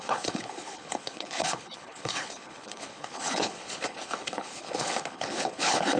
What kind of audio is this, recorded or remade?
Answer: remade